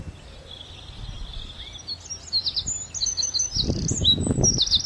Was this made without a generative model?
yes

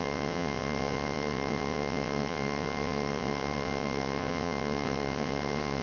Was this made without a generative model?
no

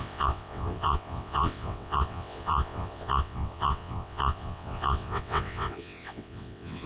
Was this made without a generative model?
no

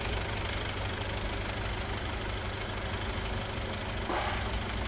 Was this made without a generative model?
yes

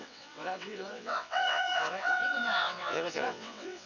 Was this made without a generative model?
no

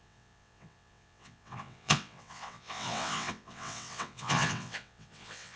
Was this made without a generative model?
no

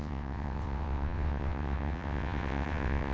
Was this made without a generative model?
no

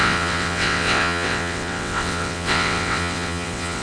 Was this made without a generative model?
no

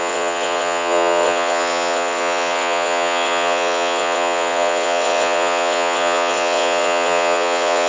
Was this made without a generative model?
no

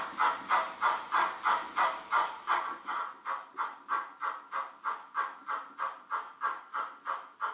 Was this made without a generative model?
yes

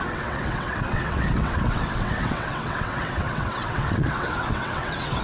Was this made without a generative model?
no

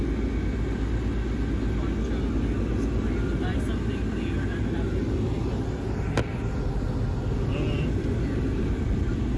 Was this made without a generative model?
yes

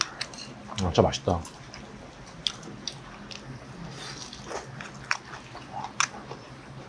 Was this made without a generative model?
yes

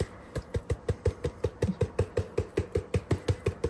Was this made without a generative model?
yes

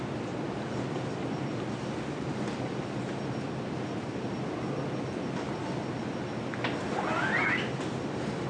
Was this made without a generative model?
yes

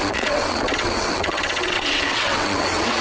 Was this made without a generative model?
no